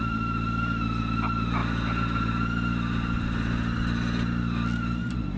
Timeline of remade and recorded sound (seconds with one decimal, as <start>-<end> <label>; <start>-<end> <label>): 0.0-5.4 recorded